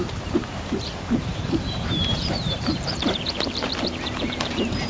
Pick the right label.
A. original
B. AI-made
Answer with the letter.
B